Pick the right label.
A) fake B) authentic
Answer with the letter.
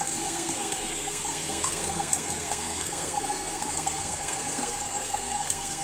A